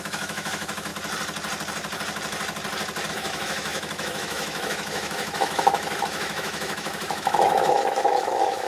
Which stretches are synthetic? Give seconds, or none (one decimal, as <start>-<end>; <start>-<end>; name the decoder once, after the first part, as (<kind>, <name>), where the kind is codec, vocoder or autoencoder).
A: 0.0-0.9 (autoencoder, DAC-VAE); 3.1-8.7